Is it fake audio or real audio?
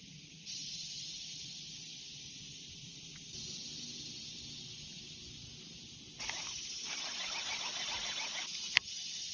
real